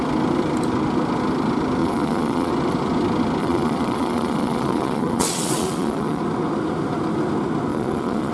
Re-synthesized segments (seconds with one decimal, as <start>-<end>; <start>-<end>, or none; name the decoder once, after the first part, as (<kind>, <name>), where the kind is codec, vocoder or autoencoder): 1.8-2.5 (vocoder, Vocos); 3.4-6.2; 7.7-8.3